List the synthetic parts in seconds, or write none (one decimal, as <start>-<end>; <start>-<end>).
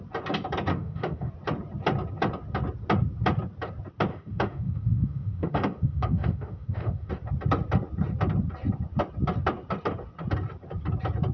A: 0.7-1.3; 4.1-7.1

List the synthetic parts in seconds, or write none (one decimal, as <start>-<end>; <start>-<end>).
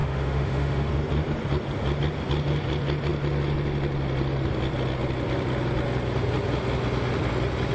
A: 0.0-0.9